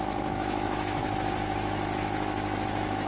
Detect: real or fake fake